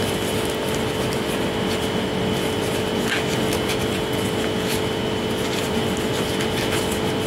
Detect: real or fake real